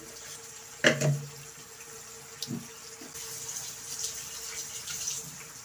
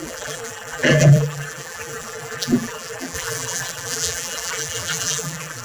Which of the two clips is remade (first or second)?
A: second